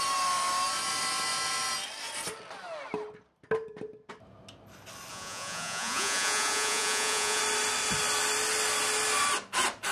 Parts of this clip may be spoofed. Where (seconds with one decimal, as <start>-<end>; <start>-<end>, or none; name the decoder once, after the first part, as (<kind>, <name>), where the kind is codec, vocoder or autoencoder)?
5.1-7.4 (vocoder, Vocos)